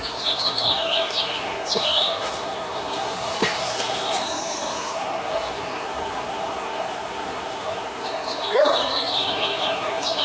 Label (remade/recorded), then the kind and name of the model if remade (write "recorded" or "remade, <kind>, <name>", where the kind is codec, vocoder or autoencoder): remade, codec, SNAC